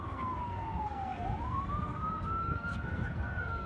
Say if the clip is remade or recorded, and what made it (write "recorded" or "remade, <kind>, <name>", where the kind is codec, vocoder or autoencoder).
remade, codec, SNAC